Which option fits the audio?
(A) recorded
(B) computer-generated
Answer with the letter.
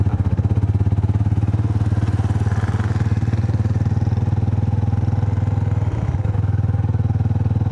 A